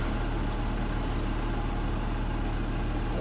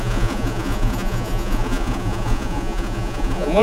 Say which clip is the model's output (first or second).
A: second